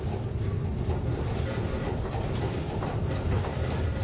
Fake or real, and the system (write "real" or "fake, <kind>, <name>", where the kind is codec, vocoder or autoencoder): real